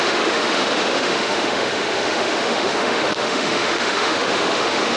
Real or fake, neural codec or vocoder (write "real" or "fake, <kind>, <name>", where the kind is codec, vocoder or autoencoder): fake, autoencoder, DAC-VAE